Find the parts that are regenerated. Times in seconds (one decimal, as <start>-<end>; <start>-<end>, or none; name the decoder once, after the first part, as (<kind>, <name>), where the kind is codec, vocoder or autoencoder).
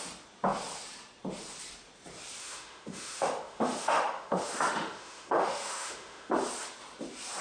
2.4-6.3 (autoencoder, DAC-VAE)